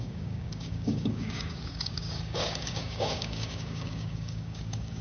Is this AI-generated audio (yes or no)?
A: yes